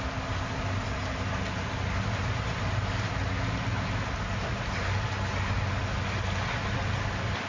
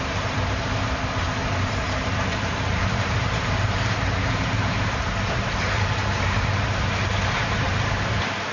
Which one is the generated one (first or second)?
second